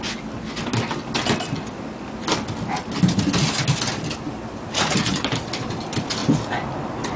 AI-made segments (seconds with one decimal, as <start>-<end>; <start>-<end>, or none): 3.9-5.5